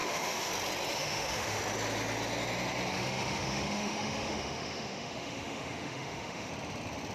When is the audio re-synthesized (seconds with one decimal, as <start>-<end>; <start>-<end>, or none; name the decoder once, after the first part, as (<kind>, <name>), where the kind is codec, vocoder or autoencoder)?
0.0-0.5 (autoencoder, DAC-VAE); 0.9-1.6; 2.9-6.5